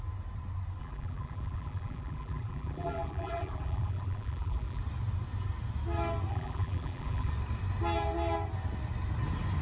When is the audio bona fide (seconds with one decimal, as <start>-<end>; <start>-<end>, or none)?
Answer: 0.0-0.8; 4.8-6.3; 7.3-9.6